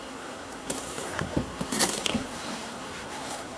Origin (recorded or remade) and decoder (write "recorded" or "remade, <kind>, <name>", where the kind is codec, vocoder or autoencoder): remade, codec, SNAC